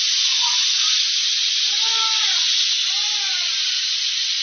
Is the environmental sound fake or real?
real